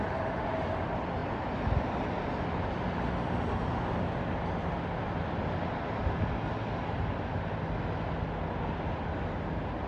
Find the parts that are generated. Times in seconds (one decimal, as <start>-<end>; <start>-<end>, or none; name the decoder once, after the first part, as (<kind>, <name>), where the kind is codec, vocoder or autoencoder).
none

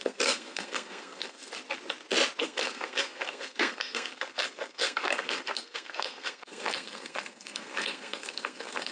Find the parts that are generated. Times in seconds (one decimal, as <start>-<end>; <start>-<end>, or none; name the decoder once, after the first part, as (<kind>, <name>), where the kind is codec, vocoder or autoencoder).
0.0-1.5 (codec, SNAC); 2.4-8.9

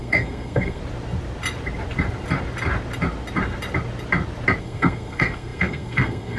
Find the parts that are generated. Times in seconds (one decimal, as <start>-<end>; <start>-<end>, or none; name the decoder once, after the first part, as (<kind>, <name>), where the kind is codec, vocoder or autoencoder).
0.0-0.8 (codec, SNAC); 4.6-6.4

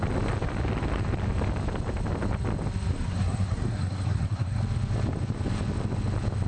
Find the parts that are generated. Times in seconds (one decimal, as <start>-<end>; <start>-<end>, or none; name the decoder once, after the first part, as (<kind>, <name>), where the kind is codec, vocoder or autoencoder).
2.9-4.6 (codec, SNAC)

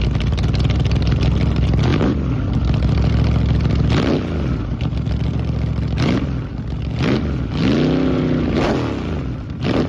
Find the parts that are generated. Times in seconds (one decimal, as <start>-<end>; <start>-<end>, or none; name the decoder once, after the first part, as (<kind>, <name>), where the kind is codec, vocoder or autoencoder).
none